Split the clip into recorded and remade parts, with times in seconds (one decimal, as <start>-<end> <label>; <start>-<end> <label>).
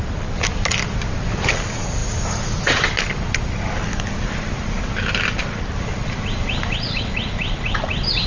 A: 0.0-8.3 recorded